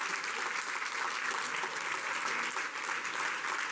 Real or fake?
real